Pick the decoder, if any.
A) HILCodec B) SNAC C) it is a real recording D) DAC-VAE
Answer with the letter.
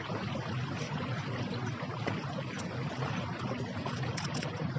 C